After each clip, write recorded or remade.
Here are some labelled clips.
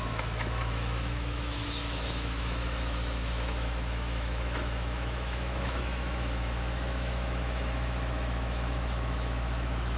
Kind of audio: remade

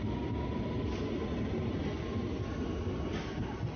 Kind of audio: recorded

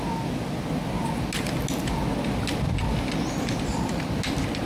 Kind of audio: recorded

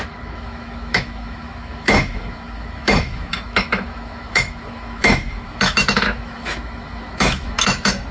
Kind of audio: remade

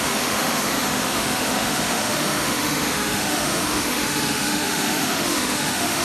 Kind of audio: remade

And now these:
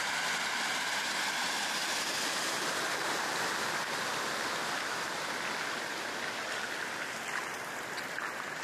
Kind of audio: recorded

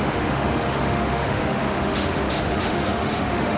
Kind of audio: remade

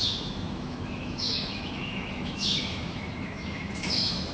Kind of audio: remade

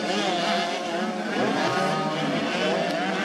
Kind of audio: recorded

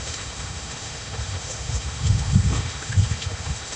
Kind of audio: remade